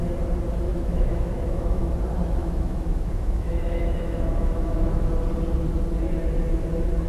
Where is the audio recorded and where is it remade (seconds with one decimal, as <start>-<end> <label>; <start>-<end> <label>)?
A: 0.0-0.7 recorded; 0.7-1.9 remade; 1.9-2.4 recorded; 2.4-5.1 remade; 5.1-7.1 recorded